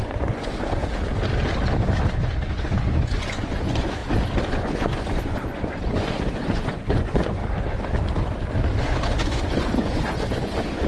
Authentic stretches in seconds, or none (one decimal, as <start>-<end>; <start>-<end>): 0.8-2.1; 4.0-4.5; 7.4-8.8